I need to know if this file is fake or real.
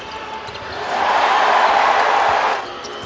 real